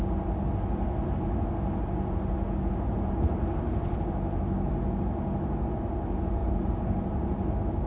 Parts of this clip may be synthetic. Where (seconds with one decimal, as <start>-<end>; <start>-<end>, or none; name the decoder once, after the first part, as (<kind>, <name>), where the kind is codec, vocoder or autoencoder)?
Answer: 6.4-7.5 (vocoder, BigVGAN v2)